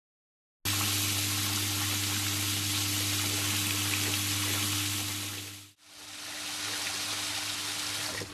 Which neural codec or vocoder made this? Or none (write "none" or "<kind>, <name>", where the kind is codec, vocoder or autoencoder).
none